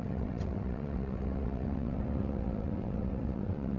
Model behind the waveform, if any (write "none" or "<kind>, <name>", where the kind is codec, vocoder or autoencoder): vocoder, WaveNeXt